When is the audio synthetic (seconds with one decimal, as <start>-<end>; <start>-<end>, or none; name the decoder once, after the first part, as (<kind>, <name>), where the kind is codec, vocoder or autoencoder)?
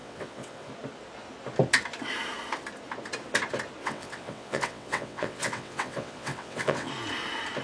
0.0-0.7 (vocoder, WaveNeXt); 3.8-6.9